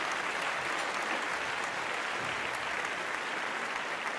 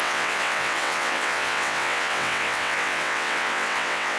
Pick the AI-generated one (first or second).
second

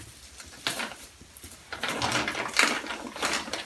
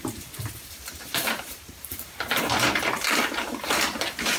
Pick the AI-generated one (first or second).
second